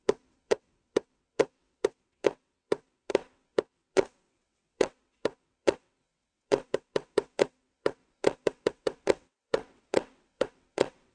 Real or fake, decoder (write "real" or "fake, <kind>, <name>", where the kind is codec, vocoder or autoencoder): fake, vocoder, WaveNeXt